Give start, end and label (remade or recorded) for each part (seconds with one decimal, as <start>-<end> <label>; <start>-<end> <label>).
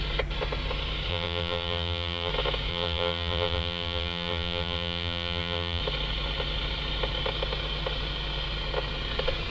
0.0-1.1 recorded; 1.1-2.3 remade; 2.3-2.7 recorded; 2.7-5.8 remade; 5.8-9.5 recorded